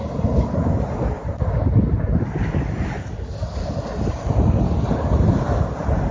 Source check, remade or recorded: recorded